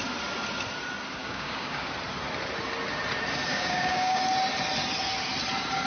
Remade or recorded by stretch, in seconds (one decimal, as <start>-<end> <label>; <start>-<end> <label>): 0.0-1.2 recorded; 1.2-1.9 remade; 1.9-3.5 recorded; 3.5-4.2 remade; 4.2-5.9 recorded